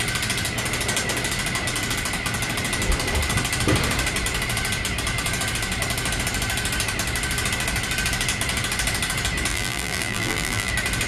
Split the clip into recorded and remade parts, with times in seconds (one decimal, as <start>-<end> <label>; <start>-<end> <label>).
0.0-9.5 recorded; 9.5-10.7 remade; 10.7-11.1 recorded